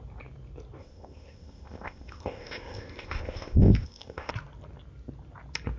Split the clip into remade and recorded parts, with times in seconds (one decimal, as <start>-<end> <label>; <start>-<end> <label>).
0.0-0.8 recorded; 0.8-4.3 remade; 4.3-5.8 recorded